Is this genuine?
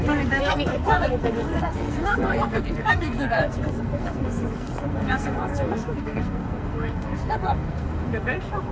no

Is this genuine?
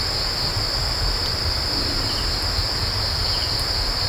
yes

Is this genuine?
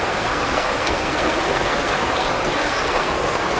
no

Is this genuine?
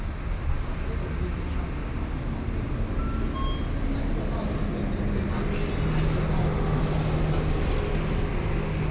yes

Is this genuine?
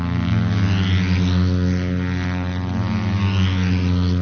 yes